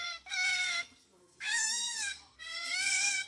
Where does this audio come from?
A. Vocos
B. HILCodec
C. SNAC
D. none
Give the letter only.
C